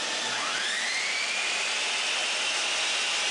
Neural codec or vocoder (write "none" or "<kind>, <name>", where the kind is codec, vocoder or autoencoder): none